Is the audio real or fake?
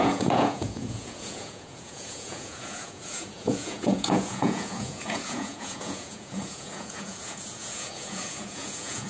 fake